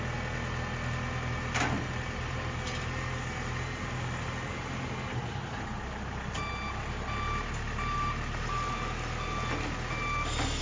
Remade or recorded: recorded